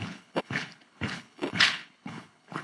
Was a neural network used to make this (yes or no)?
yes